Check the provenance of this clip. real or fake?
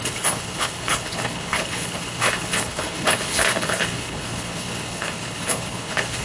fake